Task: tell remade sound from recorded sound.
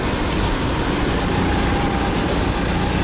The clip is recorded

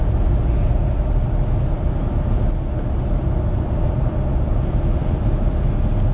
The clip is recorded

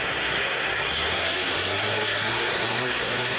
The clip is remade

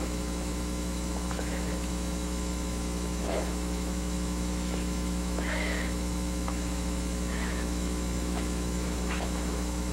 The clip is remade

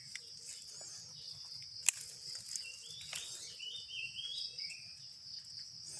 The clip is recorded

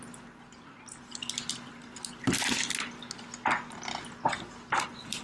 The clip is recorded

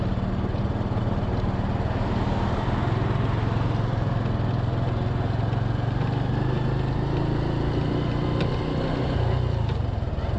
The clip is recorded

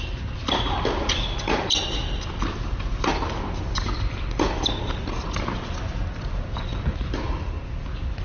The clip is recorded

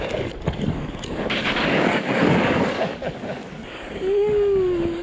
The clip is remade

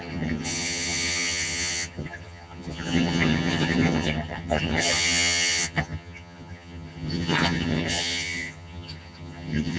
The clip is remade